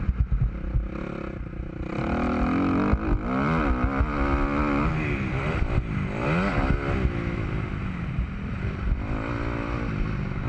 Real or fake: real